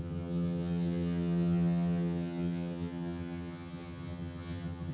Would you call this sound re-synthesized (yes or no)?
yes